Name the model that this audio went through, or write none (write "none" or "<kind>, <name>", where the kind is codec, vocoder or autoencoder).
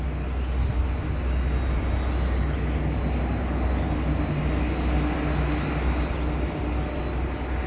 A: none